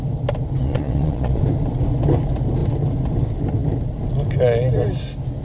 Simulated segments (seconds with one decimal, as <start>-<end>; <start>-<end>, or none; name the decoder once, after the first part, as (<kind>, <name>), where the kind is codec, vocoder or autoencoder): 0.6-1.4 (vocoder, Vocos)